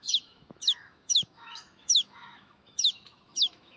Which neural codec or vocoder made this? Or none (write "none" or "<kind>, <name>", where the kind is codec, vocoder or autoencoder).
autoencoder, DAC-VAE